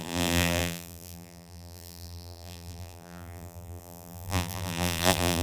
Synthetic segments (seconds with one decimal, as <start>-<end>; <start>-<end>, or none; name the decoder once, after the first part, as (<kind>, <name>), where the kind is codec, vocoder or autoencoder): 0.0-5.4 (vocoder, BigVGAN v2)